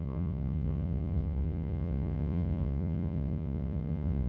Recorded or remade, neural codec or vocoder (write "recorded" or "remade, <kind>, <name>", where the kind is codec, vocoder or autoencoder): remade, vocoder, Vocos